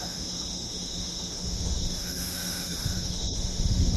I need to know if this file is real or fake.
fake